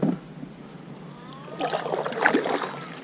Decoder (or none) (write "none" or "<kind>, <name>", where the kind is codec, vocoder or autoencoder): none